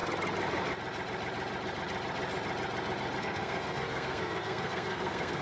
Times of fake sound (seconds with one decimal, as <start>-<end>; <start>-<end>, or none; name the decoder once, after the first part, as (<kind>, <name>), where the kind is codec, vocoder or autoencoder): 3.2-5.4 (codec, SNAC)